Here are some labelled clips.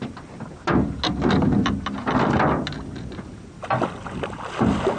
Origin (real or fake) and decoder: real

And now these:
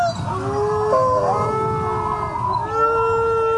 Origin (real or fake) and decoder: real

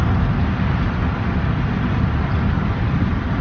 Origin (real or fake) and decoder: real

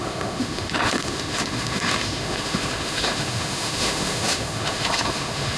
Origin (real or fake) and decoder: fake, autoencoder, DAC-VAE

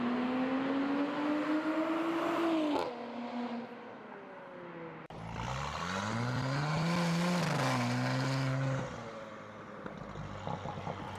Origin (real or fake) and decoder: real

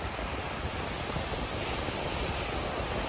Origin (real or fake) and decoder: real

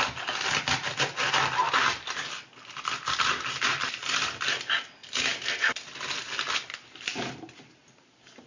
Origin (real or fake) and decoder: real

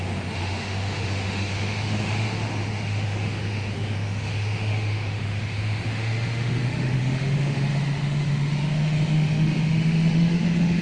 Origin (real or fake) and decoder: fake, autoencoder, DAC-VAE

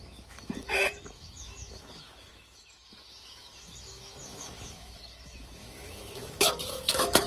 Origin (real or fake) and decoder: fake, autoencoder, DAC-VAE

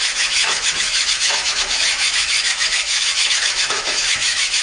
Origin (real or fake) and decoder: fake, autoencoder, DAC-VAE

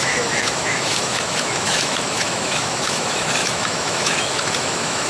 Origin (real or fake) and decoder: fake, autoencoder, DAC-VAE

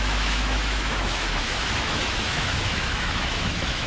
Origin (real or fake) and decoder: fake, autoencoder, DAC-VAE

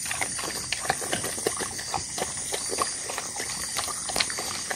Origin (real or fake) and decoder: real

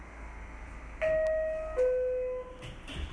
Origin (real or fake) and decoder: real